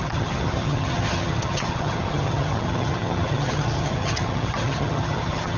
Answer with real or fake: fake